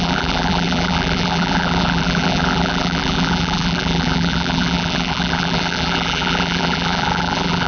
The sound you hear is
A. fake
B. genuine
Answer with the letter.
A